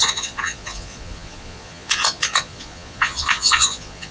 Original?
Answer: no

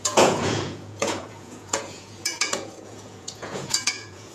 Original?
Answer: no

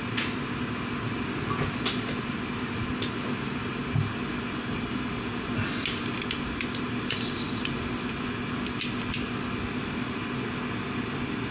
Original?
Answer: yes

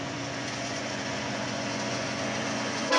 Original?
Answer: no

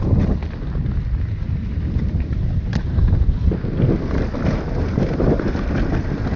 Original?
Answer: yes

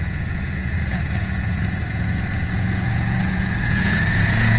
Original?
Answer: no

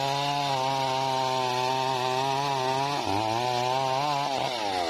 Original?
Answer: yes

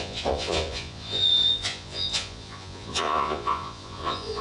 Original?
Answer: no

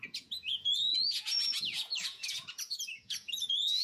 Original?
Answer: no